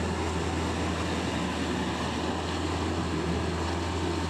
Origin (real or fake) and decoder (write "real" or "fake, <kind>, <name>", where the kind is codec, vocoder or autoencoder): real